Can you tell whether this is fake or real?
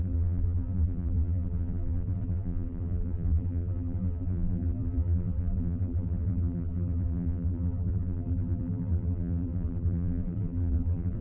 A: fake